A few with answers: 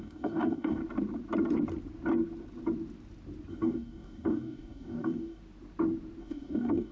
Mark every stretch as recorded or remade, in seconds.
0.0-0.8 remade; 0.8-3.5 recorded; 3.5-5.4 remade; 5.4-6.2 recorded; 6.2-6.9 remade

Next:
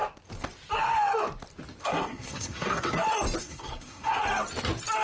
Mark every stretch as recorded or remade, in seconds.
0.0-1.8 recorded; 1.8-2.9 remade; 2.9-3.4 recorded; 3.4-4.2 remade; 4.2-5.0 recorded

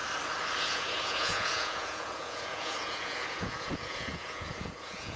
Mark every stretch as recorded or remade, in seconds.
0.0-0.6 recorded; 0.6-5.2 remade

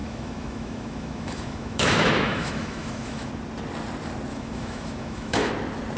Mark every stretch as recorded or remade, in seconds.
0.0-3.3 remade; 3.3-4.3 recorded; 4.3-5.5 remade; 5.5-6.0 recorded

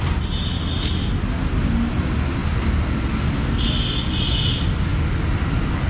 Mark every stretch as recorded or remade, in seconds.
0.0-5.9 recorded